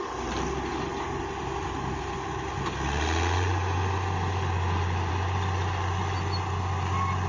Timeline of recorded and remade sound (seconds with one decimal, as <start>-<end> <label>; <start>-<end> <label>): 0.0-7.3 recorded